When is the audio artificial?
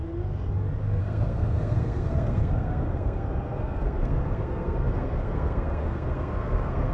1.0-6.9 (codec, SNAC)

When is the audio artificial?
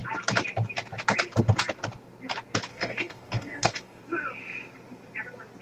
2.7-4.0 (codec, DAC)